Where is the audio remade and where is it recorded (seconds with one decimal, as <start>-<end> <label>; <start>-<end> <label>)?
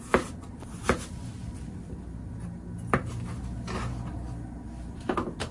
0.0-5.5 recorded